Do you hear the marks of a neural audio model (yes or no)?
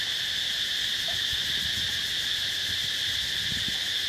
no